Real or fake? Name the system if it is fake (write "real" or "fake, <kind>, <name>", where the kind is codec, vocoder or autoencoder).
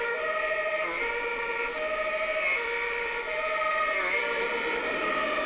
fake, vocoder, BigVGAN v2